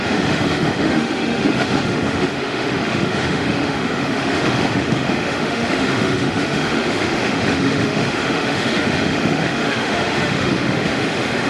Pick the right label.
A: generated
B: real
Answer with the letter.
A